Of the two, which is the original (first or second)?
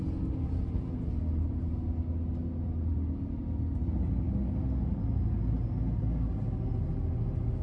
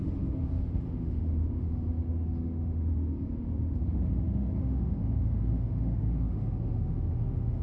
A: first